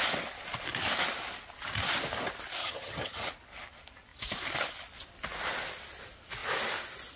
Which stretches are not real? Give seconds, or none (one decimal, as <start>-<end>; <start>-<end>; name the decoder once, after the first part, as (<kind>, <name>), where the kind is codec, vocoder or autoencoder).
2.6-3.3 (vocoder, HiFi-GAN)